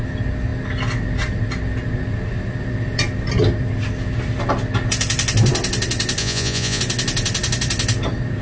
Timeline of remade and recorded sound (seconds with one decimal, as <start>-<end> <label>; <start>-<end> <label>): 0.0-6.2 recorded; 6.2-6.8 remade; 6.8-8.4 recorded